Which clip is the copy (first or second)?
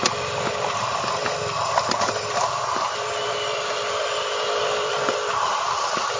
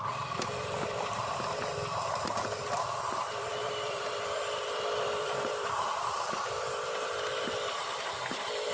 second